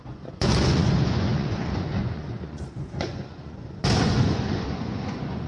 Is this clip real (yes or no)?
no